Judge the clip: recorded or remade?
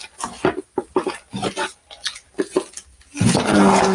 recorded